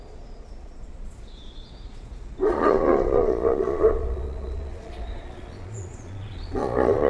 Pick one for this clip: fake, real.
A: fake